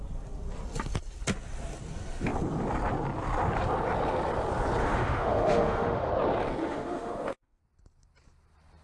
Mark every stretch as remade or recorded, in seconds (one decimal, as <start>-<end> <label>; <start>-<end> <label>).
0.0-4.8 recorded; 4.8-6.1 remade; 6.1-6.6 recorded; 6.6-7.6 remade; 7.6-8.8 recorded